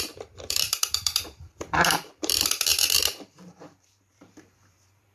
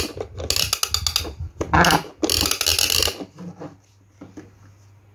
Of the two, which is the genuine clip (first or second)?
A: second